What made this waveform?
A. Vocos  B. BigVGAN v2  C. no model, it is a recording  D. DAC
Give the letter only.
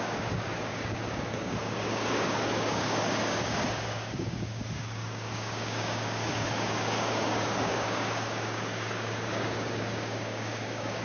D